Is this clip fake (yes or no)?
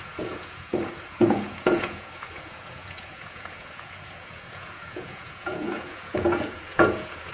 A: yes